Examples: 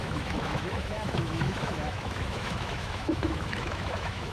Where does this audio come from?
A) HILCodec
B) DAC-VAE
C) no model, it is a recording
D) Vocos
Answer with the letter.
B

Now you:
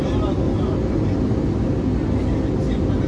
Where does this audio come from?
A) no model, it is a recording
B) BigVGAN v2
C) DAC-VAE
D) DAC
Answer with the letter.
A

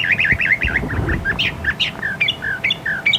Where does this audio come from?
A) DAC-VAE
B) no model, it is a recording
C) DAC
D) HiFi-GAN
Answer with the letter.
B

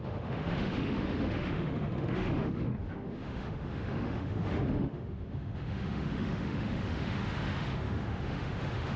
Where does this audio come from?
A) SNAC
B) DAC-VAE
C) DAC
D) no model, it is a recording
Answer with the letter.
B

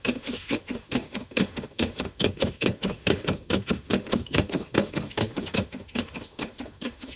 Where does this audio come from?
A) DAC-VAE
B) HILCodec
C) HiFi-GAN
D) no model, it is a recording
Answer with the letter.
A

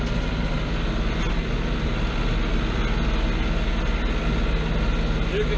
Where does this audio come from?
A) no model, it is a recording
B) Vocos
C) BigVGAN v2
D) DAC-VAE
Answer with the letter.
A